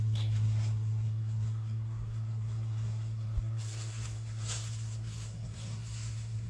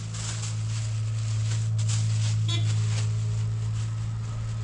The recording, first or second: second